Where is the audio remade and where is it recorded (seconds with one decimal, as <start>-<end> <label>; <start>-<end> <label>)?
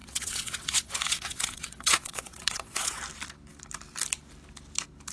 0.0-3.0 remade; 3.0-5.1 recorded